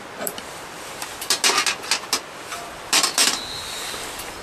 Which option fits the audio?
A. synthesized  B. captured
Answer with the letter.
B